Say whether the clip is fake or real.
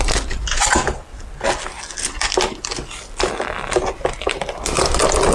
real